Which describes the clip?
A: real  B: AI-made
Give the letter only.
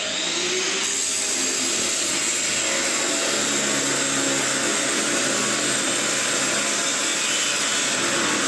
A